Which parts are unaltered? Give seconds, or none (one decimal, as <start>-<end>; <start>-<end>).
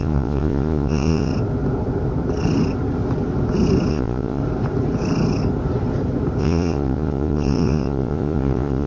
1.3-3.9; 4.4-6.4